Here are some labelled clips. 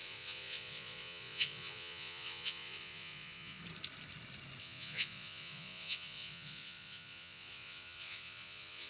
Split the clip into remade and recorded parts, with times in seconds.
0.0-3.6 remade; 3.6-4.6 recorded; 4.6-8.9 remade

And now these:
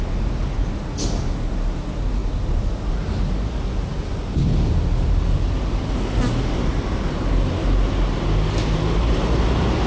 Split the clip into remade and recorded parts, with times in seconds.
0.0-9.9 recorded